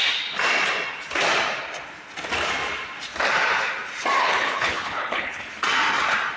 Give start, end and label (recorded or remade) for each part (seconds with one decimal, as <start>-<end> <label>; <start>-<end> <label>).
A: 0.0-4.2 recorded; 4.2-5.5 remade; 5.5-6.4 recorded